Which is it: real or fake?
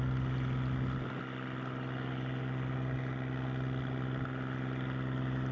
real